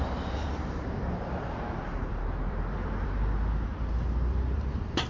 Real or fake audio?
fake